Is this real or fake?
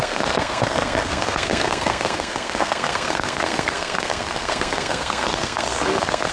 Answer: fake